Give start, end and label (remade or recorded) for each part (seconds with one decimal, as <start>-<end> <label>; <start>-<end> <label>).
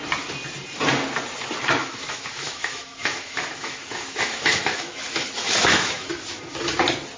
0.0-1.8 recorded; 1.8-6.1 remade; 6.1-7.2 recorded